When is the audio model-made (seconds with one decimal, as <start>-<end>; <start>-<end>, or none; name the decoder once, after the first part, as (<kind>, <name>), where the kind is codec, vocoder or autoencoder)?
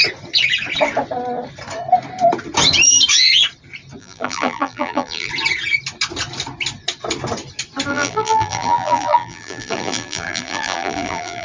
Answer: 4.0-5.3 (vocoder, BigVGAN v2); 7.9-11.4